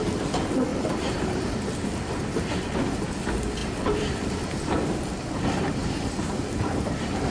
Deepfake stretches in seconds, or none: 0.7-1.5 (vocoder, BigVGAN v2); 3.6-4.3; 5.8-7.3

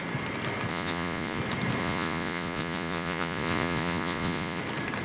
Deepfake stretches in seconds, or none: 0.7-1.4 (vocoder, Vocos); 1.8-4.6

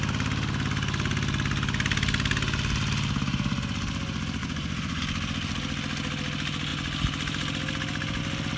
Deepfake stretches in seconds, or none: 4.4-5.0 (vocoder, Vocos)